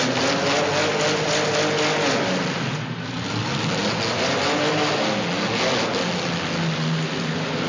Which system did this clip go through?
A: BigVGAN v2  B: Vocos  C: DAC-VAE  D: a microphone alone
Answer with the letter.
D